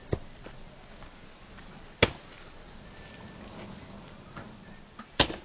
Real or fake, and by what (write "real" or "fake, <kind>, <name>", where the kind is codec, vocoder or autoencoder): real